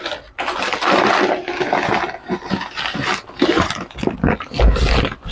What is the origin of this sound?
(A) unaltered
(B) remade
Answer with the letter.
A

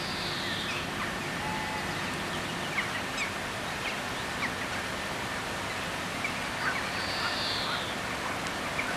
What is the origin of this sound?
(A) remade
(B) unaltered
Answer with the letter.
B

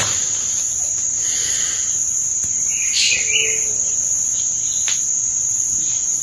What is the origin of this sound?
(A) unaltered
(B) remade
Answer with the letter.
A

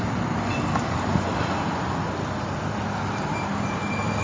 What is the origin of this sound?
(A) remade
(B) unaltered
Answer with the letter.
B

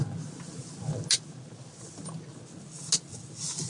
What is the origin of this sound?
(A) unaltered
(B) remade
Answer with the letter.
A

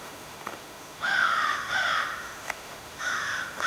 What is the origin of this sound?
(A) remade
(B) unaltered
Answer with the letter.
A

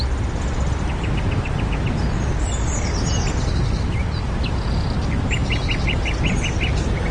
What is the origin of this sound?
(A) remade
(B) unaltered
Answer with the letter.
B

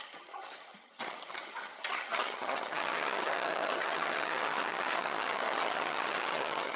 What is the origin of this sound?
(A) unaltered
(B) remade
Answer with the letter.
B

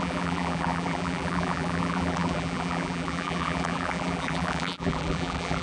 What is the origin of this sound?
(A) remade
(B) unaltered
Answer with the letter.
A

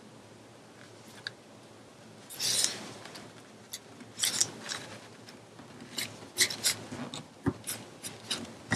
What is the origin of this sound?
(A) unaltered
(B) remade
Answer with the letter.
A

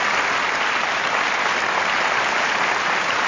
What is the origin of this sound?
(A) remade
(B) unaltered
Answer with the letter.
B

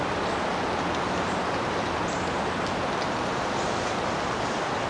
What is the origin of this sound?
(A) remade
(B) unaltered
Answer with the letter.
B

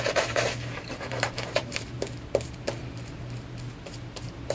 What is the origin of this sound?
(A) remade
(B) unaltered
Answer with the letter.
A